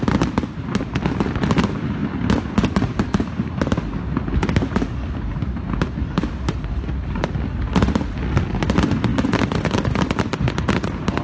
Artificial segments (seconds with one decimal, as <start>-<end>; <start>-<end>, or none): none